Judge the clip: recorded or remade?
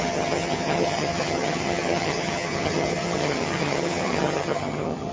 remade